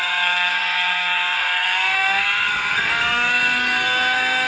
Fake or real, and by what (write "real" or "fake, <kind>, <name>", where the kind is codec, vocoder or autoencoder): fake, codec, SNAC